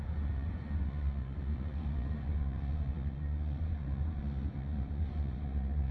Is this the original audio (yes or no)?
no